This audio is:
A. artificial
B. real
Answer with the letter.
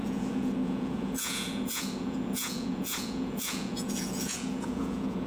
A